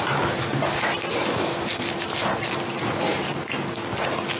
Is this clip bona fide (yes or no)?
yes